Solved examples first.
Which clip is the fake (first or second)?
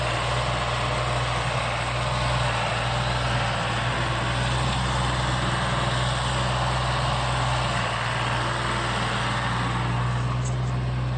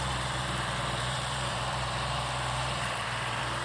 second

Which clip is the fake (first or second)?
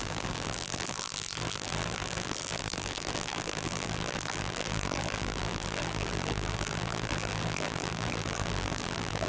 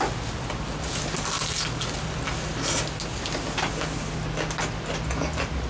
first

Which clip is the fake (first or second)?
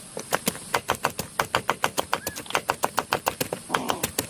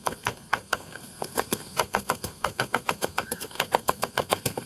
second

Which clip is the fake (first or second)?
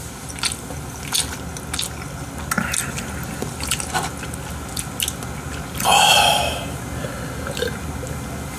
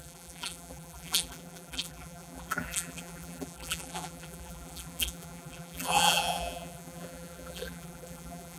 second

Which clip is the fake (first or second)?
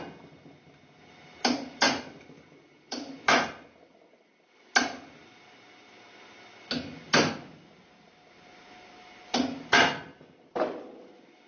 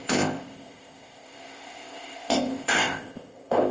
second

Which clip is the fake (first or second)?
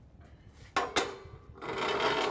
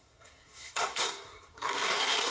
second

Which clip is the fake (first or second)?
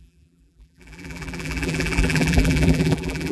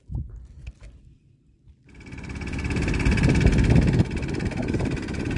first